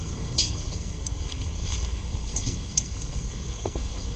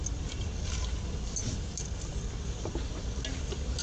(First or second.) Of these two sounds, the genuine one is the second